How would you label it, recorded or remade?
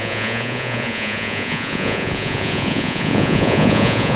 remade